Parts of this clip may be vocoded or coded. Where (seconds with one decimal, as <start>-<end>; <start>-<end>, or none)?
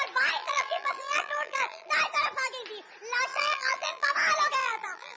0.4-1.9; 3.3-4.1; 4.6-5.2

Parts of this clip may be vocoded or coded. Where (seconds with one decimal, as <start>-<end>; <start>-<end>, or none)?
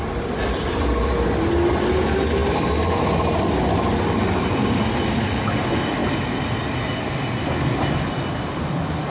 none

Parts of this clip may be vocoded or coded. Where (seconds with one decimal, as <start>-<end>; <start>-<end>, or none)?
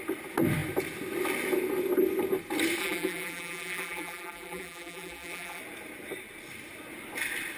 2.8-5.6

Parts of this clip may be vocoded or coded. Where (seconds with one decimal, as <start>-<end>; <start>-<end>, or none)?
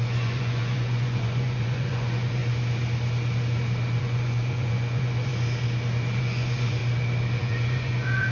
0.0-2.4; 4.0-5.3; 6.2-6.8; 7.4-8.3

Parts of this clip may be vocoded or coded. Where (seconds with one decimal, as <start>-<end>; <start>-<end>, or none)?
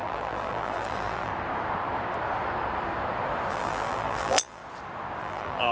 0.0-1.3; 3.5-4.6; 5.2-5.7